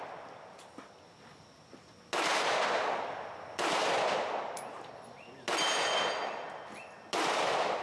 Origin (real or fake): real